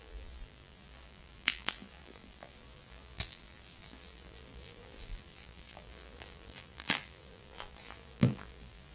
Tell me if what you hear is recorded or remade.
remade